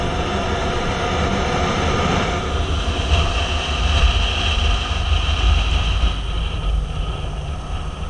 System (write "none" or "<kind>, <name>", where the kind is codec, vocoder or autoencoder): none